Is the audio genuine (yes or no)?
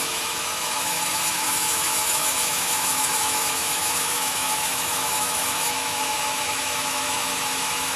no